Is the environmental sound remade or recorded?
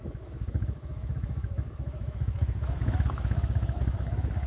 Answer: remade